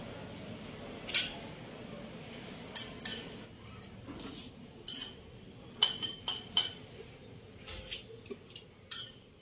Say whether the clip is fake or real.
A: real